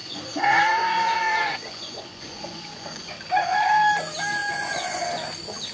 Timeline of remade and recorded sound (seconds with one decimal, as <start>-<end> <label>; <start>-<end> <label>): 0.0-3.1 remade; 3.1-4.4 recorded; 4.4-5.0 remade; 5.0-5.7 recorded